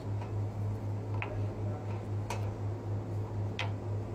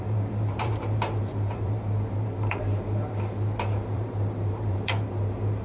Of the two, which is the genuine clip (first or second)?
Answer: first